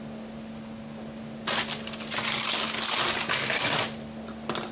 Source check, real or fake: real